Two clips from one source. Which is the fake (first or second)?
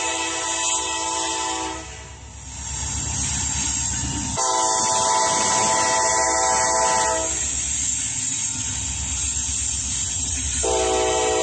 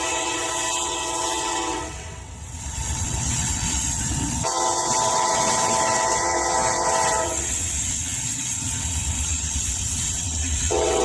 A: second